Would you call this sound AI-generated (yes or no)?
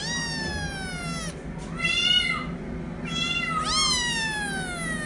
no